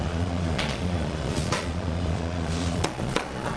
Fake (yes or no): yes